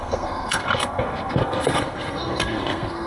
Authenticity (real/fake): fake